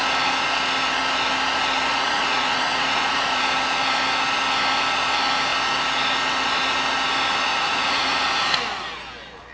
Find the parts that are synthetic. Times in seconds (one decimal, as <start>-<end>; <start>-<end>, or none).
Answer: 1.9-3.4; 7.5-8.2